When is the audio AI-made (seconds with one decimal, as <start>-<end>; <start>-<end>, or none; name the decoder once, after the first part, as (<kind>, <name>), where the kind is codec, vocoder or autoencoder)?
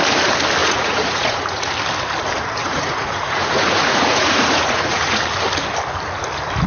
0.6-1.7 (vocoder, Vocos); 2.6-5.2